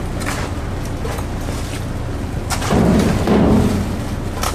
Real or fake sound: real